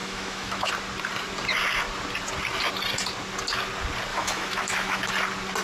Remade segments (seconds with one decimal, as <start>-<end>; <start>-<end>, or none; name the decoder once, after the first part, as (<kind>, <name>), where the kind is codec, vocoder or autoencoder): 0.0-0.7 (autoencoder, DAC-VAE); 4.1-5.1